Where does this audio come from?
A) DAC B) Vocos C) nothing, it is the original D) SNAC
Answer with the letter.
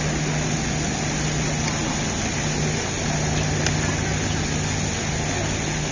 C